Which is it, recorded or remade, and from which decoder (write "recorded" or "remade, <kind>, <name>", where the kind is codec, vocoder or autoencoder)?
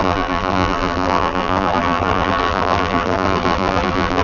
remade, vocoder, BigVGAN v2